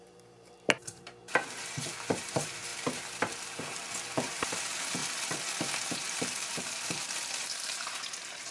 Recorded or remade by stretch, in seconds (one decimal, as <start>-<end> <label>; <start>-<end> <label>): 0.0-5.0 remade; 5.0-5.6 recorded; 5.6-8.5 remade